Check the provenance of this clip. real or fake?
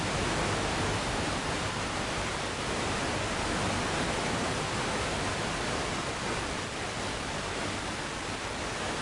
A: real